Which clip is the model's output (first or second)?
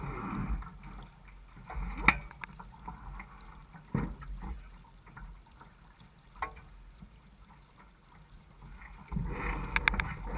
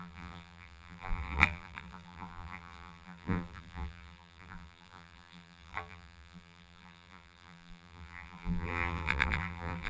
second